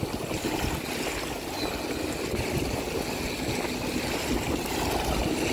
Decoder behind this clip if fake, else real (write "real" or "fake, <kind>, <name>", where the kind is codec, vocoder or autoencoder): real